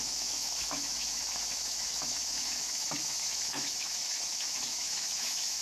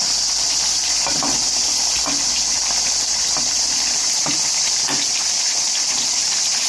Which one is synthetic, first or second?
first